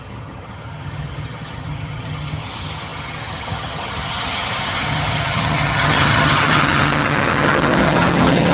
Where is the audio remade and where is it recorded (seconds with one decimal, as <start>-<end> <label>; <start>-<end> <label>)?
0.0-8.5 remade